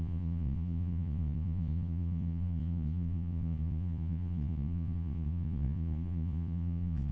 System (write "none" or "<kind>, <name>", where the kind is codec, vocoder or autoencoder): vocoder, Vocos